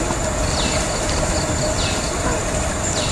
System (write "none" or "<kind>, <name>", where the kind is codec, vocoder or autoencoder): none